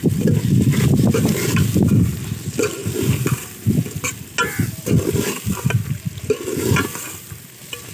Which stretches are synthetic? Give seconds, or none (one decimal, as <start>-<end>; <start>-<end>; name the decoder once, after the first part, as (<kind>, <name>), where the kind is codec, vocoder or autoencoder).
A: none